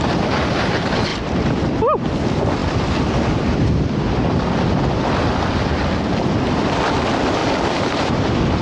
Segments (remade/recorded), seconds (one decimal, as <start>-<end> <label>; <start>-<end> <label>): 0.0-1.1 recorded; 1.1-1.8 remade; 1.8-7.4 recorded; 7.4-8.6 remade